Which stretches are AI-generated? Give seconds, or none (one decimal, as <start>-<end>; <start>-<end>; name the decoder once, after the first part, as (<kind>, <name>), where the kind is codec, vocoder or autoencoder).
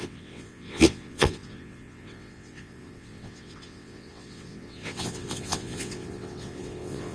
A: 0.0-7.1 (vocoder, WaveNeXt)